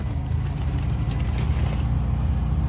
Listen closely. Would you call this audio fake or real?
real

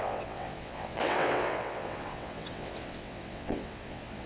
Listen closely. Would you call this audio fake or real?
fake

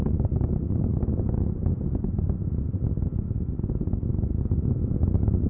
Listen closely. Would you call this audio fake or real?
real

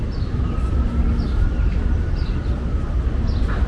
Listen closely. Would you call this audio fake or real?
real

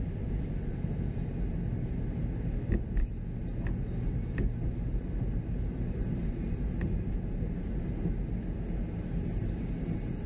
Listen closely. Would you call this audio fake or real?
real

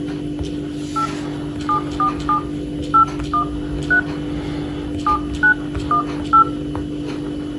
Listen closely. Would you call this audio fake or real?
real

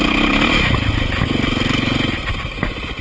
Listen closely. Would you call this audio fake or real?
real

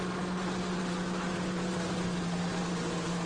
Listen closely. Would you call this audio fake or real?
real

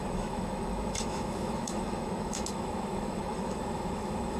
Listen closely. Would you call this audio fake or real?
fake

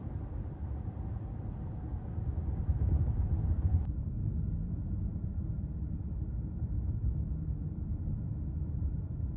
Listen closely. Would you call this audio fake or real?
real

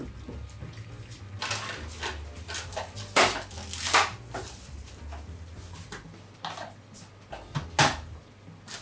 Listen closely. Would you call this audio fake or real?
real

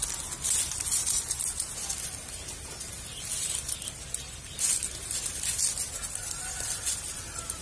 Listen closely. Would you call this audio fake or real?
real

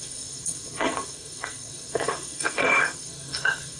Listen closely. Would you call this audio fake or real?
fake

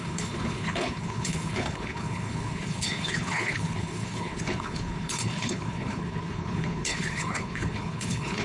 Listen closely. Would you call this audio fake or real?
fake